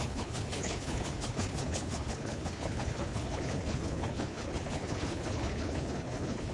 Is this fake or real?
fake